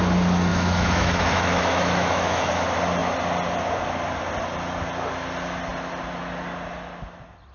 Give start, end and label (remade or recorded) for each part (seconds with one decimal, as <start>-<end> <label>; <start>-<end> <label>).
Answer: 0.0-0.5 recorded; 0.5-2.5 remade; 2.5-7.5 recorded